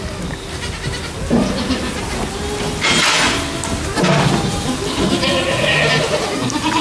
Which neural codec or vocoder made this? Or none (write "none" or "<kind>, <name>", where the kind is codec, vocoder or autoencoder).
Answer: none